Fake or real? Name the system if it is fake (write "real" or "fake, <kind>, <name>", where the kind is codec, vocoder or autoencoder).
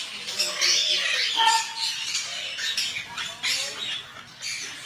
real